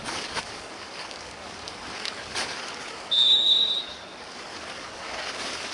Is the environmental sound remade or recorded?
remade